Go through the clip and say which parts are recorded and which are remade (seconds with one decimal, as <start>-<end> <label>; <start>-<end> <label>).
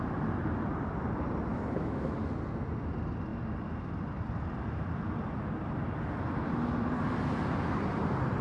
0.0-1.5 recorded; 1.5-2.2 remade; 2.2-8.4 recorded